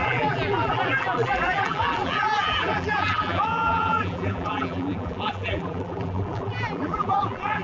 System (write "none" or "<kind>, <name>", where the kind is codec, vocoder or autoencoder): vocoder, BigVGAN v2